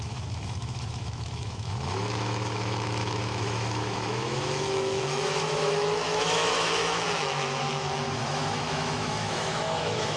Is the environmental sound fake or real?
fake